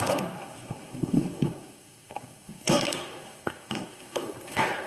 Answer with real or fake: fake